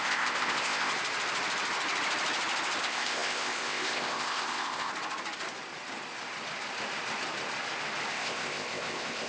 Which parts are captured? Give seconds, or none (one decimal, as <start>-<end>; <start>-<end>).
0.9-2.8; 4.9-8.1